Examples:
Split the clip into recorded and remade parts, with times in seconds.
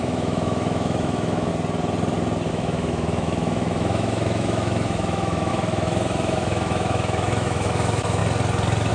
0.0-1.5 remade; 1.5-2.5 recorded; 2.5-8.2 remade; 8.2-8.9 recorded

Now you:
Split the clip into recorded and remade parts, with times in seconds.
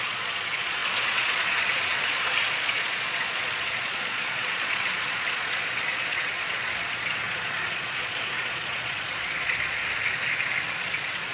0.0-9.8 remade; 9.8-10.7 recorded; 10.7-11.3 remade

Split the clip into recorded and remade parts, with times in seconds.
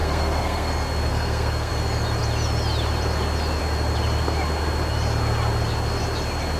0.0-0.7 remade; 0.7-1.1 recorded; 1.1-1.7 remade; 1.7-6.6 recorded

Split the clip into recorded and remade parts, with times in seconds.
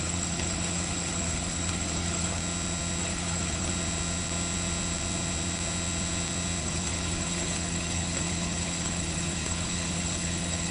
0.0-2.4 remade; 2.4-3.0 recorded; 3.0-3.7 remade; 3.7-6.6 recorded; 6.6-10.7 remade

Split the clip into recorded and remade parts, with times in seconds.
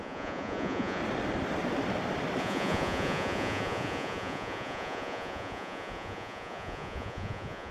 0.0-1.0 remade; 1.0-2.4 recorded; 2.4-7.7 remade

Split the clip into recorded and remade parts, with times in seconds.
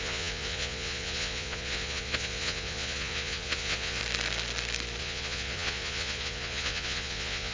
0.0-4.0 remade; 4.0-5.0 recorded; 5.0-7.5 remade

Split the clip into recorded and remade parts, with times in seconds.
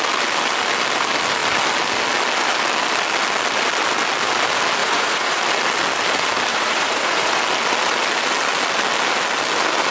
0.0-4.8 recorded; 4.8-5.4 remade; 5.4-6.5 recorded; 6.5-7.4 remade; 7.4-9.9 recorded